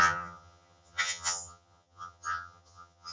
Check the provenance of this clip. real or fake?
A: fake